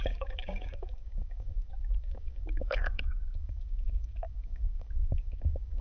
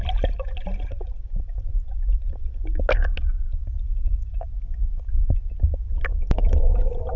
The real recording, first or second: second